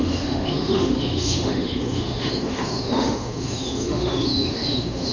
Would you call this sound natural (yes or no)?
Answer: no